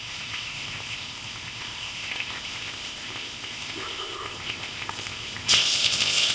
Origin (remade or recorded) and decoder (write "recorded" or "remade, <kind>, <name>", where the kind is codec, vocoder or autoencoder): remade, codec, ZipCodec